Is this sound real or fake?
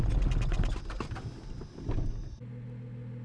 real